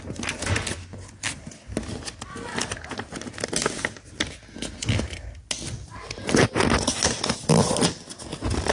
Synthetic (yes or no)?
no